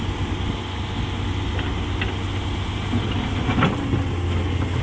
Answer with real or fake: real